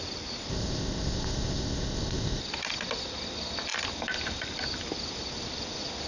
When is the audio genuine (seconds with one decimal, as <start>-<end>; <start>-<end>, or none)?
0.0-0.5; 2.4-6.1